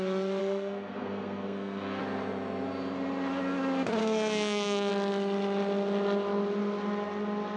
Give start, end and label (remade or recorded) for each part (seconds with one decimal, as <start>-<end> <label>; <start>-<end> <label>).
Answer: 0.0-0.4 recorded; 0.4-2.0 remade; 2.0-4.0 recorded; 4.0-4.9 remade; 4.9-7.6 recorded